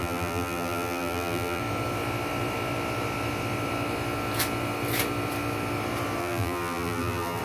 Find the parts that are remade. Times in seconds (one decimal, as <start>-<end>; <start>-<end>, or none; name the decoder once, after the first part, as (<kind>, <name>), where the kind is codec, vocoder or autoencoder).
0.0-1.6 (vocoder, BigVGAN v2); 6.2-7.4